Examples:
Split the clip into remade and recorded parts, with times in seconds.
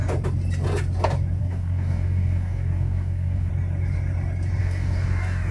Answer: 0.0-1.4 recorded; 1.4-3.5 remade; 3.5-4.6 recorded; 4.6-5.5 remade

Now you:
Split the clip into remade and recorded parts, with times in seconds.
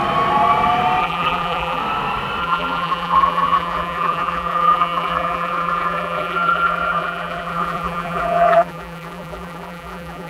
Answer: 0.0-1.0 recorded; 1.0-1.8 remade; 1.8-2.4 recorded; 2.4-10.3 remade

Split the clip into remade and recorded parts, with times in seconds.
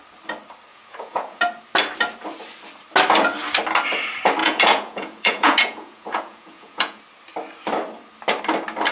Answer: 0.0-0.7 recorded; 0.7-1.4 remade; 1.4-4.4 recorded; 4.4-7.0 remade; 7.0-8.9 recorded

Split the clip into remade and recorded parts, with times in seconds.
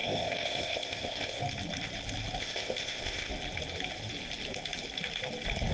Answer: 0.0-1.4 remade; 1.4-2.4 recorded; 2.4-3.3 remade; 3.3-5.7 recorded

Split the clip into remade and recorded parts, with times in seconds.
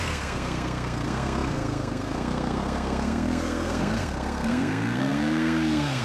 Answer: 0.0-6.0 remade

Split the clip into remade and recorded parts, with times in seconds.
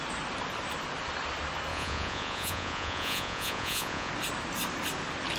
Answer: 0.0-1.7 recorded; 1.7-4.1 remade; 4.1-5.4 recorded